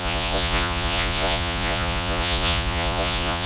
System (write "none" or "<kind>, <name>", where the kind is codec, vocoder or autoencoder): vocoder, Vocos